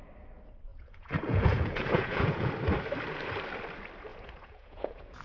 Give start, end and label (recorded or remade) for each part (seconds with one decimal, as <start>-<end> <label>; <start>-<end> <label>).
0.0-0.7 recorded; 0.7-2.5 remade; 2.5-4.1 recorded; 4.1-5.2 remade